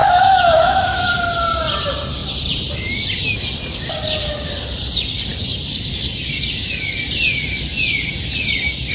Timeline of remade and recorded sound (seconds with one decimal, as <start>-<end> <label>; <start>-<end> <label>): 0.0-1.1 remade; 1.1-8.9 recorded